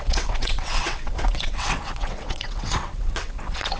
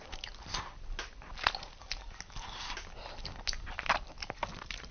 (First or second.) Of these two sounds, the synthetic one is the first